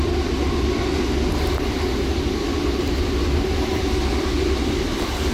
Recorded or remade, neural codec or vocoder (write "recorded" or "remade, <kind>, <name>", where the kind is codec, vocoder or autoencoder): recorded